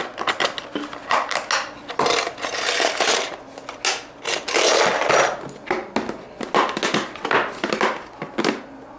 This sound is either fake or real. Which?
real